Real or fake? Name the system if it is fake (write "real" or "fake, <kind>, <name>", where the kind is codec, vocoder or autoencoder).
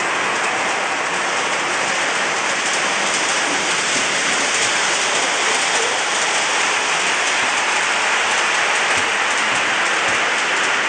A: real